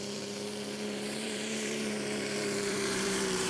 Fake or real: fake